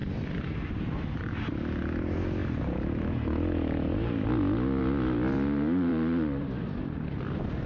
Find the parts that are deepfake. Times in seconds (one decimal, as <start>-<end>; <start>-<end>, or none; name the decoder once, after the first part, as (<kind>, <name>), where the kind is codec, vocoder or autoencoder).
5.9-6.6 (vocoder, BigVGAN v2)